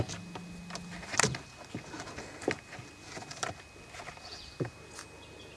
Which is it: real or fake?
real